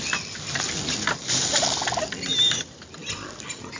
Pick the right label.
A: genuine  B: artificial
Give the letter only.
A